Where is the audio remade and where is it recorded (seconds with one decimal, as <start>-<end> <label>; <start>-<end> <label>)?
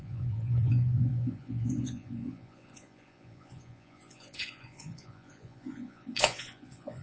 0.0-7.0 remade